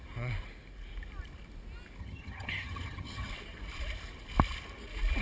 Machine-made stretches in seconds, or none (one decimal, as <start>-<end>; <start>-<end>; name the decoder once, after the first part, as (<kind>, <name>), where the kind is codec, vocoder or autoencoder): 2.0-3.3 (vocoder, HiFi-GAN)